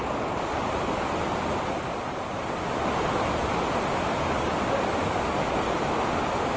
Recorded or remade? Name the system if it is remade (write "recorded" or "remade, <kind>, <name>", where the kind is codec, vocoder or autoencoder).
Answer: recorded